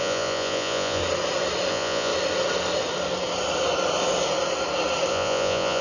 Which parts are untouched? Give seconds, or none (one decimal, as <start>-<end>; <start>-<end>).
1.0-1.7; 2.1-5.1